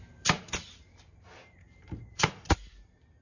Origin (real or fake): real